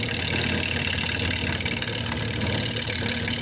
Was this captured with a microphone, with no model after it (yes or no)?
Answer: yes